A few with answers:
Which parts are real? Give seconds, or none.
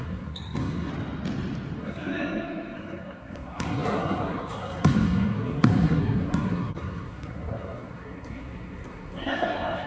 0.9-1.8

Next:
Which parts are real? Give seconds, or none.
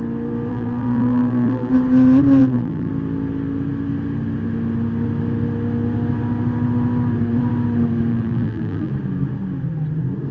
0.0-0.5; 1.7-2.4; 2.9-8.1; 8.9-10.3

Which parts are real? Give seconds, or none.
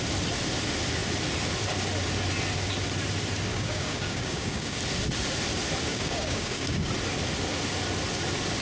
0.0-3.5; 4.8-5.9; 6.9-8.6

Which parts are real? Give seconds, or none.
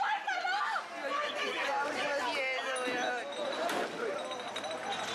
0.0-1.0; 2.2-5.1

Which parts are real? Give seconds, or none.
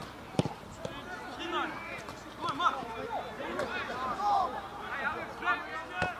0.0-3.5; 4.8-6.2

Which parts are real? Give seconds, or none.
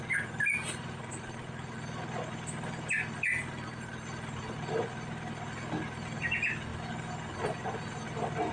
0.0-8.5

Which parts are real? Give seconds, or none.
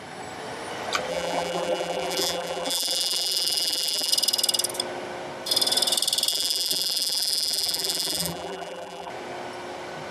0.0-1.1; 4.1-6.3; 9.1-10.1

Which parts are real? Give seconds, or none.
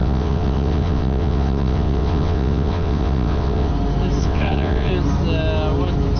3.7-4.2; 4.9-6.2